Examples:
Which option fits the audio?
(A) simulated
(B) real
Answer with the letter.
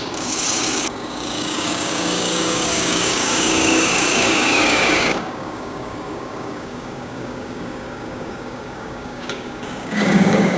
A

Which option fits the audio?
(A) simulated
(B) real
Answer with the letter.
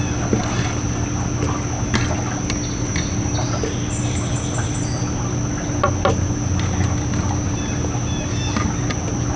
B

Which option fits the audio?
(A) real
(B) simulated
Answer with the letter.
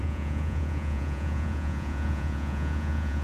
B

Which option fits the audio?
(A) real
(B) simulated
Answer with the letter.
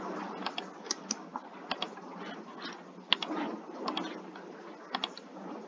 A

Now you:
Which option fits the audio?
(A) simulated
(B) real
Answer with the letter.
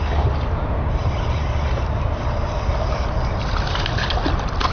B